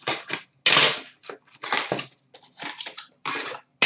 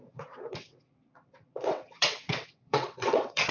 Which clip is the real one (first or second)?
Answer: first